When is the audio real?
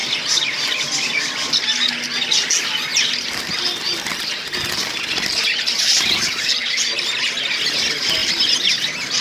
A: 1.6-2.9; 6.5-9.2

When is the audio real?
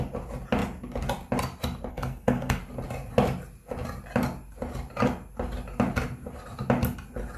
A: 0.0-1.9; 2.6-7.4